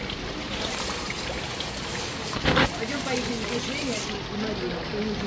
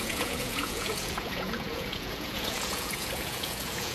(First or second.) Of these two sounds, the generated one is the second